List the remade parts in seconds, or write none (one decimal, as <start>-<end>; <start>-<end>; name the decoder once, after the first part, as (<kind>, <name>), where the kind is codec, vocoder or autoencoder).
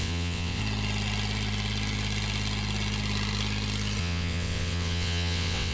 0.0-0.6 (vocoder, WaveNeXt); 4.0-5.7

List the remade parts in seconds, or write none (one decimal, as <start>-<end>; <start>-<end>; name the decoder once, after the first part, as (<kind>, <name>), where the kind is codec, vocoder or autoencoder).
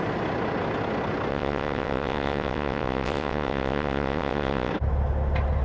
1.3-4.7 (vocoder, WaveNeXt)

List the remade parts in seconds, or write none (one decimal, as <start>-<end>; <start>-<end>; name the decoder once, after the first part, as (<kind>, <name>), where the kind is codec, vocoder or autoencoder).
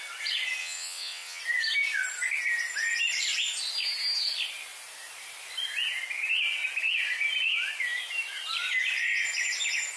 0.6-1.4 (vocoder, WaveNeXt)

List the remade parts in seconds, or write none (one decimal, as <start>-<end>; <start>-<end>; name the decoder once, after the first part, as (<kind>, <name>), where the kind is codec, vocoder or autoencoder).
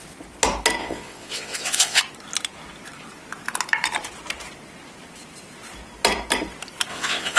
0.8-2.0 (vocoder, WaveNeXt); 6.9-7.4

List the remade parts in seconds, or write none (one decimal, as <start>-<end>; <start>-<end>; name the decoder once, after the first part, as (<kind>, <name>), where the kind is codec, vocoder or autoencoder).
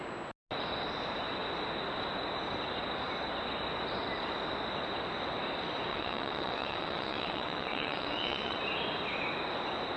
5.9-8.6 (vocoder, WaveNeXt)